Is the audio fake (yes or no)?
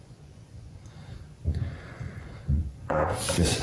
yes